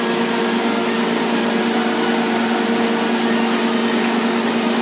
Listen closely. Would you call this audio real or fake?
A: real